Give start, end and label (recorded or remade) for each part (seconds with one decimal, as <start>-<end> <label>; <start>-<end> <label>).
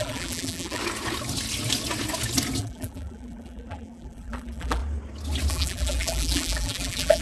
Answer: 0.0-0.8 remade; 0.8-2.6 recorded; 2.6-4.8 remade; 4.8-5.5 recorded; 5.5-7.2 remade